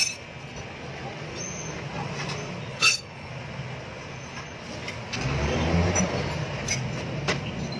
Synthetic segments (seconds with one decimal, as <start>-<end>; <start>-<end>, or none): 2.7-3.3